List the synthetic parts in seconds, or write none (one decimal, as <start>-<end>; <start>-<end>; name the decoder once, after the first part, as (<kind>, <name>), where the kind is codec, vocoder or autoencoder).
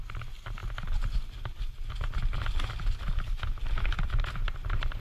none